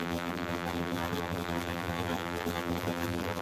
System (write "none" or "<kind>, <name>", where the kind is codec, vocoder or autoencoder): vocoder, BigVGAN v2